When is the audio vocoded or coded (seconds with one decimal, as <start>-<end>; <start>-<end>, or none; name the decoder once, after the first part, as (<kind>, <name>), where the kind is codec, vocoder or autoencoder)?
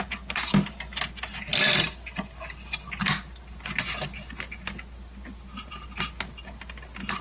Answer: none